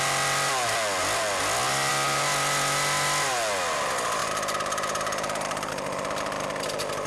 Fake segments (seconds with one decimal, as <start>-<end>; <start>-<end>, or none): 4.2-5.7